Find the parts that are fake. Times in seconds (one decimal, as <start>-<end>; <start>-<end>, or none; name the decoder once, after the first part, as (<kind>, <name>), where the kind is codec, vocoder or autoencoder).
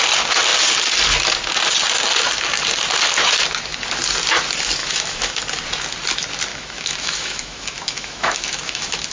4.8-5.4 (autoencoder, DAC-VAE); 6.5-9.1